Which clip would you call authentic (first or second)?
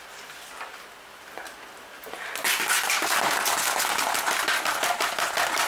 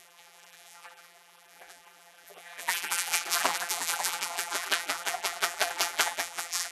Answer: first